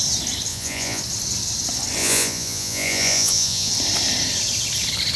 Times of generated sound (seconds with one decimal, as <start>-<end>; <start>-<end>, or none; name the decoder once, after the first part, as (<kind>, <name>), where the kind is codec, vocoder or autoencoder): 0.5-1.0 (vocoder, Vocos); 2.0-3.7